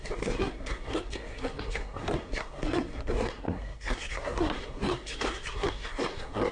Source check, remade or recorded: remade